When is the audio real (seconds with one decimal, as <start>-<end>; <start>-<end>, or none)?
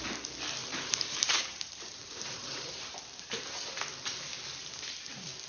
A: 0.0-0.6; 3.4-5.5